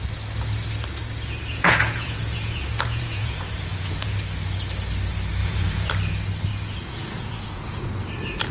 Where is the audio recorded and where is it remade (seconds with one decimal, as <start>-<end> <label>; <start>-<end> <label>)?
0.0-1.5 recorded; 1.5-4.2 remade; 4.2-5.4 recorded; 5.4-5.9 remade; 5.9-6.5 recorded; 6.5-7.8 remade; 7.8-8.5 recorded